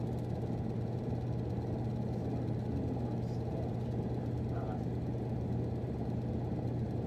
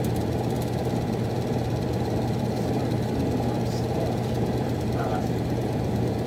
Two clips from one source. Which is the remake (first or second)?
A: second